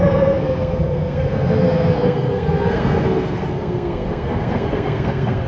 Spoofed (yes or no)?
yes